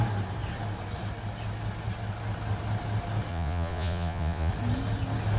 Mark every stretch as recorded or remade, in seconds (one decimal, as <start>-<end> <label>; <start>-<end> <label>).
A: 0.0-3.3 recorded; 3.3-4.5 remade; 4.5-5.4 recorded